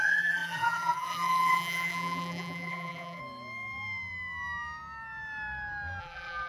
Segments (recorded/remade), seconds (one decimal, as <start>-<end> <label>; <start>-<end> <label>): 0.0-3.2 remade; 3.2-6.0 recorded; 6.0-6.5 remade